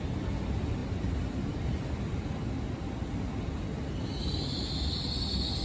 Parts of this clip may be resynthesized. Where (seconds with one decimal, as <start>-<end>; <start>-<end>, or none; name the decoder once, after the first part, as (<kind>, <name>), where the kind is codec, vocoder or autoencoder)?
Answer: none